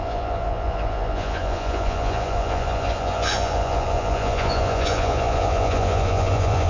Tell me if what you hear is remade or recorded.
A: remade